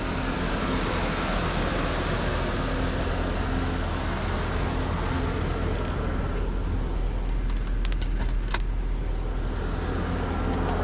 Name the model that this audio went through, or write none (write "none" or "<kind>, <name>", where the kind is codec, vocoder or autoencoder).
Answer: none